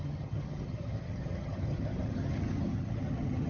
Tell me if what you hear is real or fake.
fake